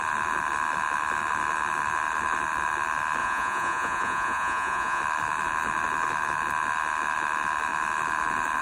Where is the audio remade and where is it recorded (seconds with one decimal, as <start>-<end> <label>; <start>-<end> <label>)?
0.0-3.2 recorded; 3.2-5.0 remade; 5.0-8.6 recorded